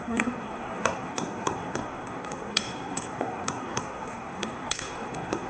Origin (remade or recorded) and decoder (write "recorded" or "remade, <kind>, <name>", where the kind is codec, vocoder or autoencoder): remade, codec, SNAC